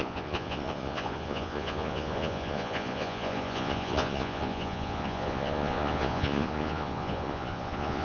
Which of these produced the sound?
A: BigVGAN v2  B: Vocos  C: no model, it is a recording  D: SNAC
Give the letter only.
B